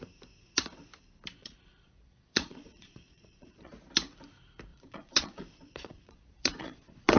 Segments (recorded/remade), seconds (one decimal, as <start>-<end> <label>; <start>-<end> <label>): 0.0-1.4 recorded; 1.4-3.7 remade; 3.7-4.7 recorded; 4.7-7.2 remade